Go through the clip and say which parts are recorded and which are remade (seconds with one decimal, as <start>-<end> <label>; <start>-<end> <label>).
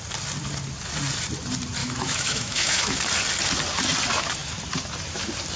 0.0-1.8 recorded; 1.8-3.0 remade; 3.0-5.6 recorded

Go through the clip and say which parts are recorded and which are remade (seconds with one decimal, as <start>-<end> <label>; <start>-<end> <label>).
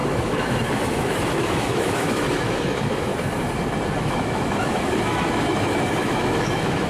0.0-3.1 remade; 3.1-4.0 recorded; 4.0-6.9 remade